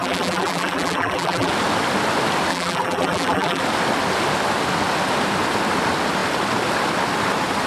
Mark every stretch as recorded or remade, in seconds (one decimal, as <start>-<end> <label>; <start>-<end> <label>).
0.0-1.5 remade; 1.5-2.5 recorded; 2.5-3.6 remade; 3.6-7.7 recorded